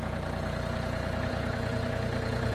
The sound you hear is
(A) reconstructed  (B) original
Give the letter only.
A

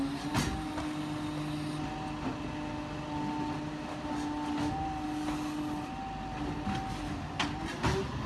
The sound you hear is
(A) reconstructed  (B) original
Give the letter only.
B